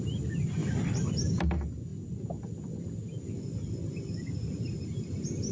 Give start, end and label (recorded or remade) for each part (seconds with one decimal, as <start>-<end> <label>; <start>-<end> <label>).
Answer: 0.0-5.5 recorded